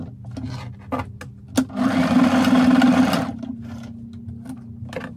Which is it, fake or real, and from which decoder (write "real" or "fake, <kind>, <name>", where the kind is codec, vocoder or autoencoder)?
real